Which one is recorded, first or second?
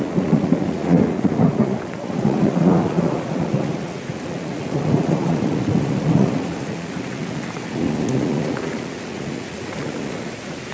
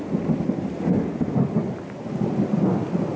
second